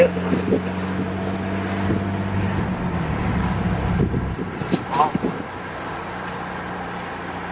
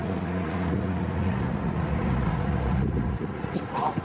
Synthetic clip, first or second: second